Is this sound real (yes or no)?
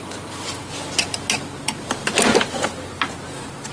yes